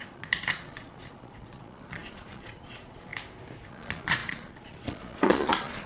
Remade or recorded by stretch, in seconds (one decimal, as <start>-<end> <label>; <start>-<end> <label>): 0.0-3.1 remade; 3.1-3.7 recorded; 3.7-5.9 remade